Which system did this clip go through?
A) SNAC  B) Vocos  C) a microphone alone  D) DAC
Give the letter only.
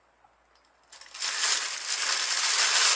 C